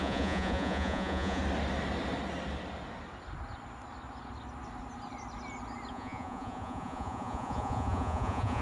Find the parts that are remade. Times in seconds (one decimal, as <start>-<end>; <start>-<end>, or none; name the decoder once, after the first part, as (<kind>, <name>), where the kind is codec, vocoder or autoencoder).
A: 0.0-1.4 (vocoder, Vocos); 5.9-8.6